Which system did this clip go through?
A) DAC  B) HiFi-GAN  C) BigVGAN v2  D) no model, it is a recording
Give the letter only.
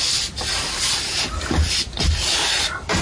D